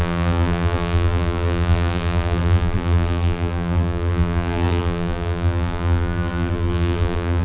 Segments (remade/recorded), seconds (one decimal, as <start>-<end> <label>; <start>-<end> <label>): 0.0-7.4 remade